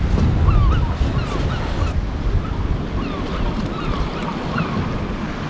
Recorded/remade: recorded